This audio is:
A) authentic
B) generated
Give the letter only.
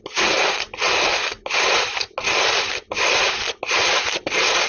A